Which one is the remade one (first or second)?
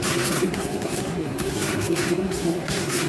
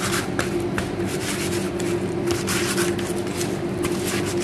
first